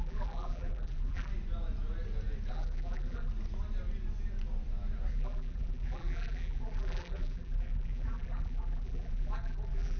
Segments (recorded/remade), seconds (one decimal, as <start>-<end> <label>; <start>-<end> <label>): 0.0-1.3 remade; 1.3-2.5 recorded; 2.5-3.3 remade; 3.3-5.1 recorded; 5.1-10.0 remade